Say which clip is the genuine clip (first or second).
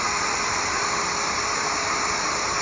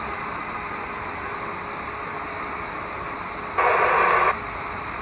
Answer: second